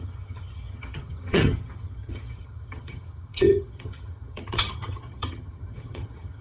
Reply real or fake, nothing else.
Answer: fake